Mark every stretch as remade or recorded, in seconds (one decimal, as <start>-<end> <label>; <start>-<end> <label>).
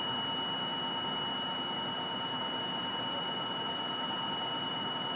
0.0-5.2 recorded